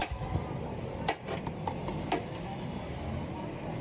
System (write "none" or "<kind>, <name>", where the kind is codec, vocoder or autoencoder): none